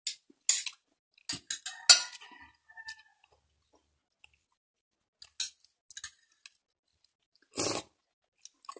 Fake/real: real